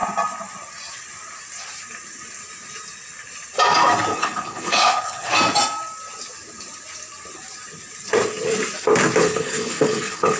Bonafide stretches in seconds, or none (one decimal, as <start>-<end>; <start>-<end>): 0.0-4.1; 5.3-9.2